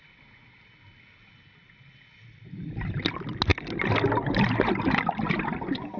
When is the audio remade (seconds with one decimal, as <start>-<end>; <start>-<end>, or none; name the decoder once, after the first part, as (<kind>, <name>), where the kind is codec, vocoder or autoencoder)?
none